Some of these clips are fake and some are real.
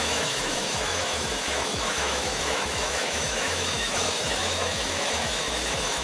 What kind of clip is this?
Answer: fake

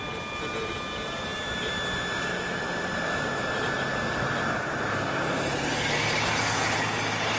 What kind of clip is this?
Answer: real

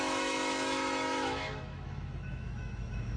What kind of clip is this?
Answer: fake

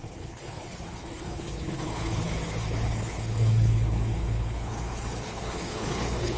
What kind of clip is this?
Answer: fake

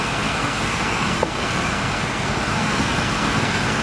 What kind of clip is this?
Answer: fake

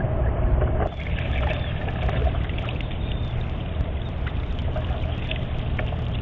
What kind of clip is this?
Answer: real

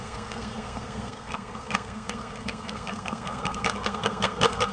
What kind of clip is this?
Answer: fake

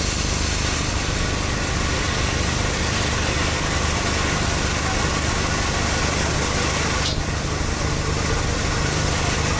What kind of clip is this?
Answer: real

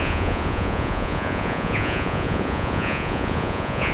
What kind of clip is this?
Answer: fake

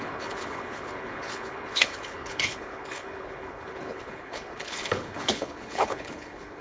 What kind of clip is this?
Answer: fake